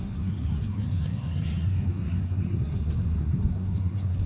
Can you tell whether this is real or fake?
fake